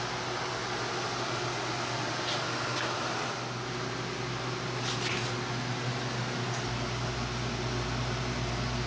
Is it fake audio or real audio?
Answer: real